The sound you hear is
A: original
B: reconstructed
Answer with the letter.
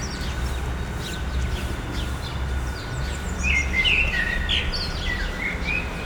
A